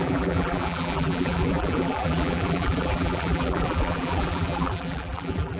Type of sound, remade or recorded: remade